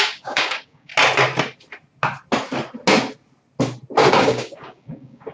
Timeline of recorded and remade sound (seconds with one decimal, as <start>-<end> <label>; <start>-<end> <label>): 0.0-0.9 remade; 0.9-4.1 recorded; 4.1-5.3 remade